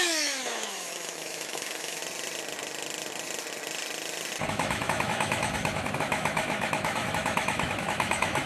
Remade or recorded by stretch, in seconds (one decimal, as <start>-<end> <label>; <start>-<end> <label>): 0.0-2.0 remade; 2.0-4.5 recorded; 4.5-8.5 remade